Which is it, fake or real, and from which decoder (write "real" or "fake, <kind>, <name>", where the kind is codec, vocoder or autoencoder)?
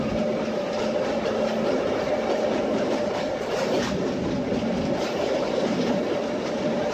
real